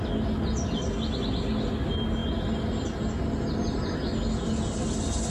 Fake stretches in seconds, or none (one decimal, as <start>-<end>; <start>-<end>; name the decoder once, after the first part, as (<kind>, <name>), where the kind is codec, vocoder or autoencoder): none